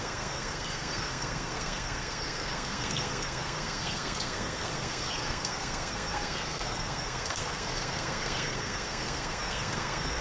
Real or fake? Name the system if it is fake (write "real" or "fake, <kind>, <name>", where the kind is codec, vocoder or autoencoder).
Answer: fake, codec, SNAC